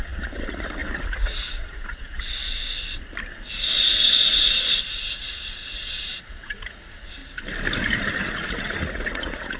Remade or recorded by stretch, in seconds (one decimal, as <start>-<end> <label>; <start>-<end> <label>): 0.0-2.6 remade; 2.6-3.8 recorded; 3.8-7.2 remade; 7.2-8.2 recorded; 8.2-9.6 remade